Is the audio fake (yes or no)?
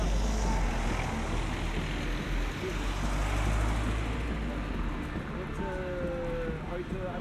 no